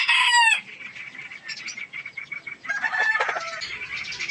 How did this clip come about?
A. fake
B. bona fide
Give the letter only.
B